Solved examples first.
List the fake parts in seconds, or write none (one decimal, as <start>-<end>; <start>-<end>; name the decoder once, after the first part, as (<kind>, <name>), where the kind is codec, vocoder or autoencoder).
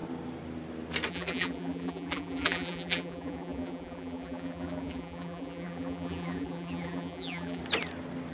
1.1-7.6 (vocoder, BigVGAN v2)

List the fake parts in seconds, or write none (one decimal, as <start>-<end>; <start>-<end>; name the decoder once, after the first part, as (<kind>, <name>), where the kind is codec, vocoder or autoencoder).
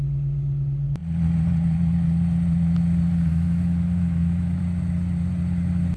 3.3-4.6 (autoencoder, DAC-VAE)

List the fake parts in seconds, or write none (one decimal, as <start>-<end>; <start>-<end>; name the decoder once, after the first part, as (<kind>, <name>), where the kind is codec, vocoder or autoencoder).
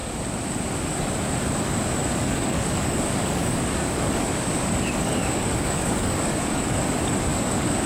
2.1-6.8 (codec, DAC); 7.3-7.9